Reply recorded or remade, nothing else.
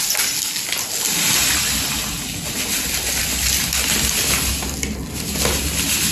recorded